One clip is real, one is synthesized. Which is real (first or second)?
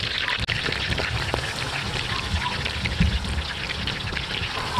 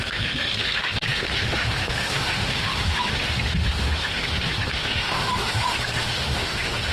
first